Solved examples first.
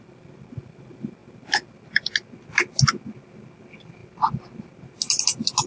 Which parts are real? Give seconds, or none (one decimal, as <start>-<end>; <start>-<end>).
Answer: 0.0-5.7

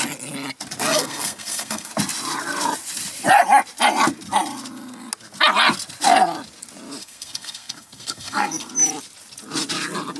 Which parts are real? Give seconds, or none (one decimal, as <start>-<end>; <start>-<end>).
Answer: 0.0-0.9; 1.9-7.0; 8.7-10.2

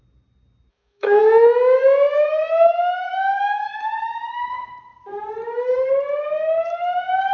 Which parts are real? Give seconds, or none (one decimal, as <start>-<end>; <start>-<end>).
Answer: 0.0-0.7; 1.2-7.3

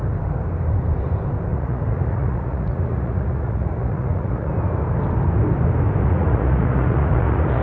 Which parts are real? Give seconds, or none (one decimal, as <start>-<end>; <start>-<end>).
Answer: 0.0-1.5; 4.5-6.0

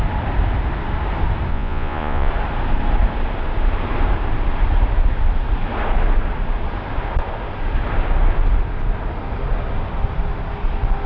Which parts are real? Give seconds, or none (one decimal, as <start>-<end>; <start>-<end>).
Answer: 0.0-1.5; 2.3-11.1